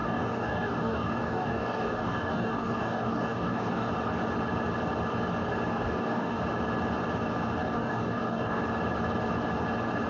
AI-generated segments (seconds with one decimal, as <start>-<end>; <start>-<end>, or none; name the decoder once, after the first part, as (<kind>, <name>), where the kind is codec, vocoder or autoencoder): 0.0-3.9 (codec, DAC); 5.7-6.4; 7.6-8.6